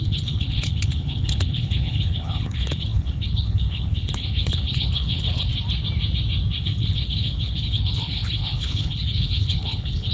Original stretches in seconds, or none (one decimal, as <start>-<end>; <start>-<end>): 5.5-6.6